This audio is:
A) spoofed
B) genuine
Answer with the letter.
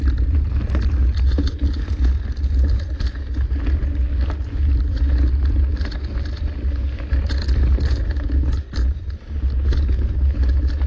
B